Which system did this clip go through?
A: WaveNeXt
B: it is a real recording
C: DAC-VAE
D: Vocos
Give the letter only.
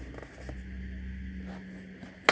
B